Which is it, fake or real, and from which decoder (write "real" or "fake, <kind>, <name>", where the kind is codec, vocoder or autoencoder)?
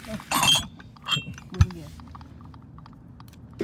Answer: real